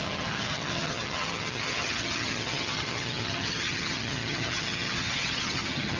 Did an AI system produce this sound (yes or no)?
yes